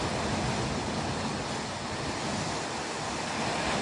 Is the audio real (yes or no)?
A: yes